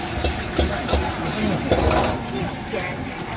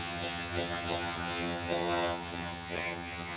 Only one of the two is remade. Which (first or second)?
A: second